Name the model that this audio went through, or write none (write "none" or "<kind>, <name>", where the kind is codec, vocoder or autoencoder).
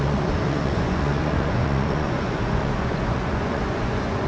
vocoder, Vocos